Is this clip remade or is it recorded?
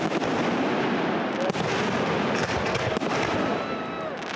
recorded